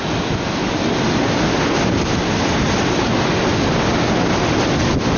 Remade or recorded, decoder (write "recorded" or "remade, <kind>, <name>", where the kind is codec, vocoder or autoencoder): recorded